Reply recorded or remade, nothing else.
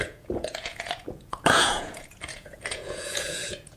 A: remade